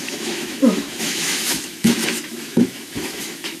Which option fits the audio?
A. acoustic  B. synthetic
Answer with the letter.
B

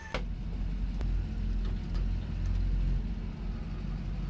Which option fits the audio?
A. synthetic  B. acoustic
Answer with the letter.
B